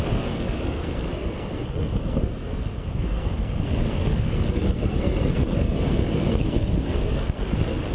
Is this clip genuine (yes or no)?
no